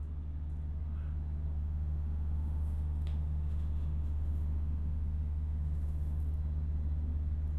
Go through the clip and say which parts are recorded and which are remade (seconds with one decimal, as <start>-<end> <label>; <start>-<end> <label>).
0.0-1.6 recorded; 1.6-6.2 remade; 6.2-7.6 recorded